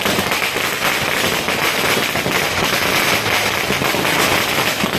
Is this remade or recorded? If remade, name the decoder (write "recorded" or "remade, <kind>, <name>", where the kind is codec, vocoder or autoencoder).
recorded